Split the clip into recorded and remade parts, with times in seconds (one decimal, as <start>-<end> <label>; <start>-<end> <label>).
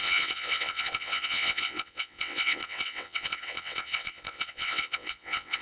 0.0-5.6 remade